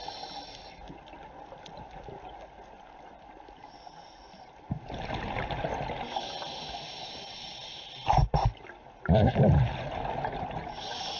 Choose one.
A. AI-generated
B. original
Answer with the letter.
B